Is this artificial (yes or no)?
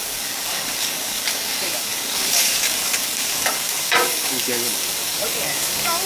yes